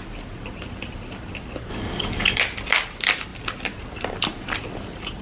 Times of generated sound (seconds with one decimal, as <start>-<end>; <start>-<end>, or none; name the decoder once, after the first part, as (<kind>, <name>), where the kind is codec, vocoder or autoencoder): 1.7-2.4 (codec, DAC)